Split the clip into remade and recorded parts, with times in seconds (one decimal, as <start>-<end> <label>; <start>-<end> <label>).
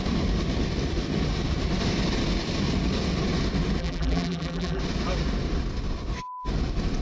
0.0-3.8 recorded; 3.8-4.8 remade; 4.8-7.0 recorded